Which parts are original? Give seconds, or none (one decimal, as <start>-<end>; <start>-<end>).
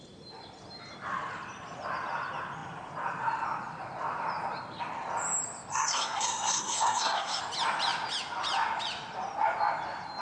0.0-5.7; 7.4-10.2